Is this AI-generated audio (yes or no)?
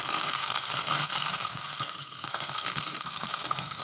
yes